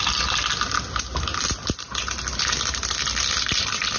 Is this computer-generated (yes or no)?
no